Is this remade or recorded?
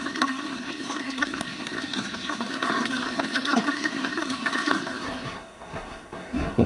remade